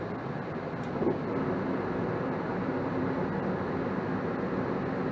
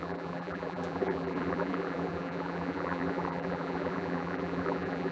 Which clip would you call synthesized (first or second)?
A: second